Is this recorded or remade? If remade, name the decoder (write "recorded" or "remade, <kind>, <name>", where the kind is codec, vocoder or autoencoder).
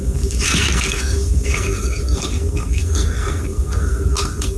remade, codec, SNAC